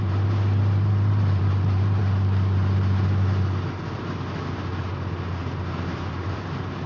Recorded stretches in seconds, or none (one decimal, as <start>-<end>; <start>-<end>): 2.0-6.1